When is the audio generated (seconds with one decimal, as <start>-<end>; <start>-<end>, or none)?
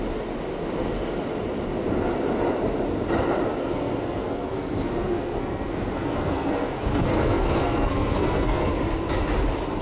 3.6-8.7